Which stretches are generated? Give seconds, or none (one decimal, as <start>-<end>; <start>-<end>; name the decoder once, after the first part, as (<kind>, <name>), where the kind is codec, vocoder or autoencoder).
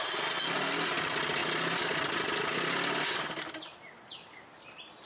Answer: none